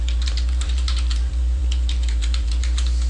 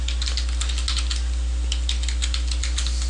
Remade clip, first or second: first